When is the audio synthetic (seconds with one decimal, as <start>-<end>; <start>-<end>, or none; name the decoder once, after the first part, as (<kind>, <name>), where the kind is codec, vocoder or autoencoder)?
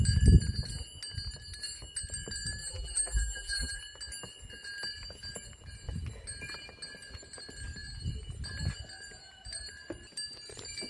2.6-3.8 (vocoder, BigVGAN v2)